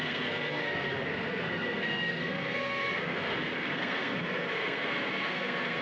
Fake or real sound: fake